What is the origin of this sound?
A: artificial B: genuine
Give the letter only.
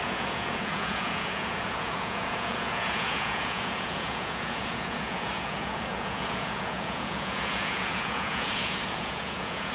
A